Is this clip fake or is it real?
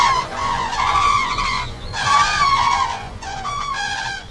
fake